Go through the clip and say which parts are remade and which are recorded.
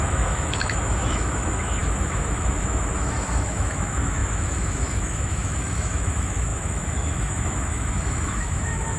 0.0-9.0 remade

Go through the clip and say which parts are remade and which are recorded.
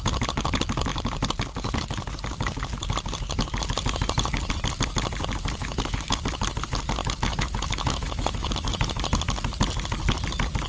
0.0-5.6 recorded; 5.6-6.2 remade; 6.2-7.0 recorded; 7.0-8.5 remade; 8.5-10.7 recorded